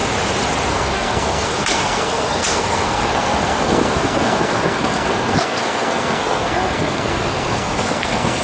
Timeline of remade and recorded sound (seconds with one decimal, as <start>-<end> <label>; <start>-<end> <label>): 0.0-0.7 recorded; 0.7-8.4 remade